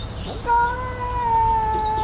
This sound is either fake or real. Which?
real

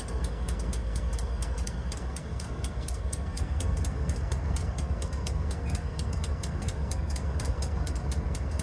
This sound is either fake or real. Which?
fake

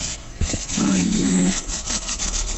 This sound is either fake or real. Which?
fake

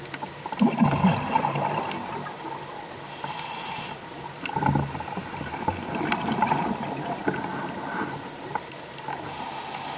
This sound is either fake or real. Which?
real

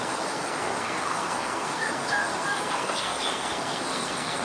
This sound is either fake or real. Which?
fake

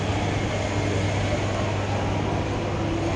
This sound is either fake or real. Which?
real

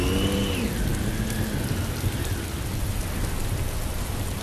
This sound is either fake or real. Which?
real